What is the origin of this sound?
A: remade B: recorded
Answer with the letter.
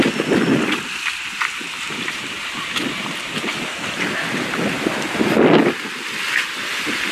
B